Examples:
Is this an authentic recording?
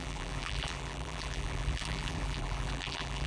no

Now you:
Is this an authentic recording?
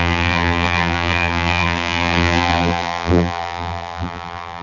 no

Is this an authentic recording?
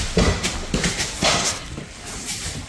yes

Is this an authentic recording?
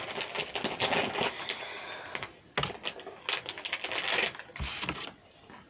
yes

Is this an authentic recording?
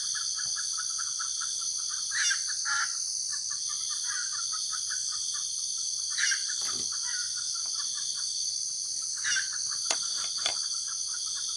yes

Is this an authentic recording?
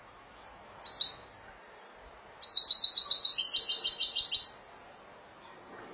yes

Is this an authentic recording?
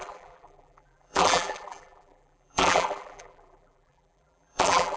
no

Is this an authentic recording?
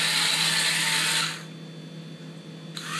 yes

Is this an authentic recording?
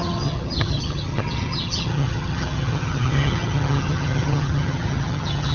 no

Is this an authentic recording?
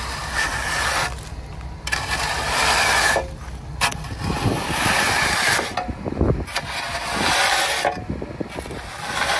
yes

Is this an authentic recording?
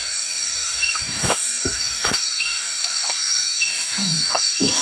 no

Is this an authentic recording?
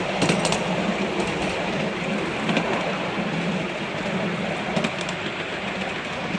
yes